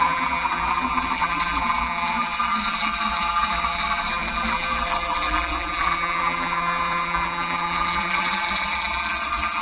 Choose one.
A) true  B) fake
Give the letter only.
B